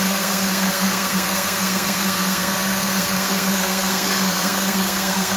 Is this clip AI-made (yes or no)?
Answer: yes